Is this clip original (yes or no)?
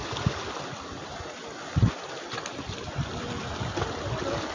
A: yes